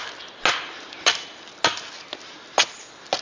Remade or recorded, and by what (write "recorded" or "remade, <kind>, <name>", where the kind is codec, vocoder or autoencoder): recorded